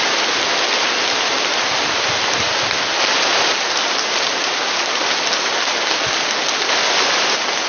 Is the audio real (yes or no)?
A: yes